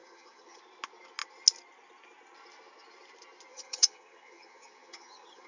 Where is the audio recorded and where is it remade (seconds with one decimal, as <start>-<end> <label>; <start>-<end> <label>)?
0.0-0.6 remade; 0.6-3.5 recorded; 3.5-5.5 remade